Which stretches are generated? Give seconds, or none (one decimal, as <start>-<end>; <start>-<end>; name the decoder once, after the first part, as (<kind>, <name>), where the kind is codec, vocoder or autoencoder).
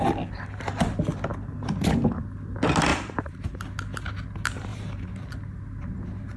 2.9-3.6 (vocoder, BigVGAN v2); 4.7-5.3